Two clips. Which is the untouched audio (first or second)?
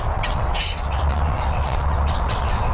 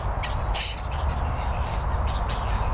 second